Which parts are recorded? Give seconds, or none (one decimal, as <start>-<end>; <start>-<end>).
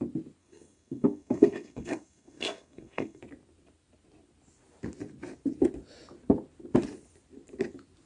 0.0-0.4; 3.2-8.1